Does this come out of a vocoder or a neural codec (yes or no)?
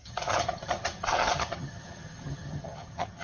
yes